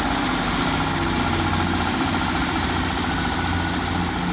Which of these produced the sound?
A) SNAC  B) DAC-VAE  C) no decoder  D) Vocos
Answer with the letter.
C